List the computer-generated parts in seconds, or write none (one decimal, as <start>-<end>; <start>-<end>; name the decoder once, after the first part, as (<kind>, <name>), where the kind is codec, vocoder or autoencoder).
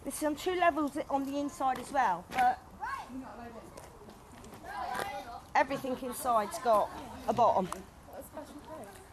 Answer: none